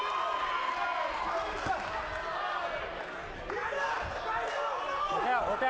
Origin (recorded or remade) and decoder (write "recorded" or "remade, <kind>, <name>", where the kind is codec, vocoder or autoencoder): recorded